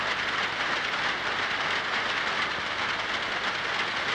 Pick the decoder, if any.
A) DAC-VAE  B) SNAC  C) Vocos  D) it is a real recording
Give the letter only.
D